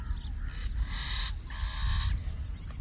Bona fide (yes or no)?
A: yes